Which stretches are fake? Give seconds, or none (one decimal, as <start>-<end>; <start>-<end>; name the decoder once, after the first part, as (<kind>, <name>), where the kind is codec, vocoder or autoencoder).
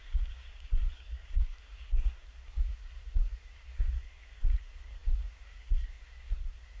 0.0-6.8 (codec, SNAC)